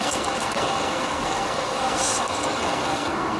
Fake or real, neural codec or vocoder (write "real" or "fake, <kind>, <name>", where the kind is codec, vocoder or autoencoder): fake, codec, SNAC